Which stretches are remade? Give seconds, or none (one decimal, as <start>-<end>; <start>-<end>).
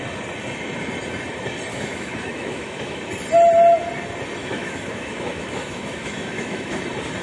1.7-3.1; 4.4-6.8